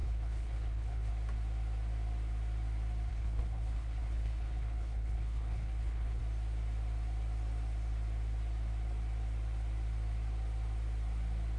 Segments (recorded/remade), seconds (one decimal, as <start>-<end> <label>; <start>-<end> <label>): 0.0-1.1 remade; 1.1-3.1 recorded; 3.1-6.2 remade; 6.2-11.6 recorded